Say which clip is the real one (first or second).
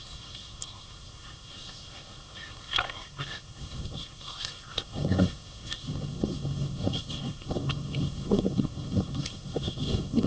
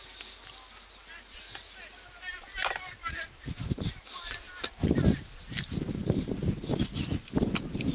second